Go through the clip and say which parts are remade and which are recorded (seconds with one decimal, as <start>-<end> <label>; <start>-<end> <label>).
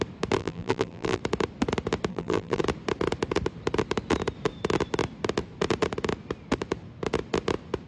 0.0-0.4 recorded; 0.4-1.2 remade; 1.2-2.1 recorded; 2.1-2.6 remade; 2.6-7.9 recorded